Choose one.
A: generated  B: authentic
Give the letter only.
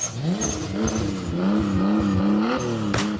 B